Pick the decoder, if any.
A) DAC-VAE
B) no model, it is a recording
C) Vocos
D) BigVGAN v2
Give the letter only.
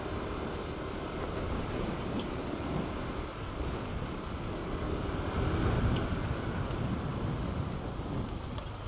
D